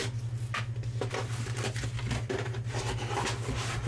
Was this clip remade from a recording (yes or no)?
no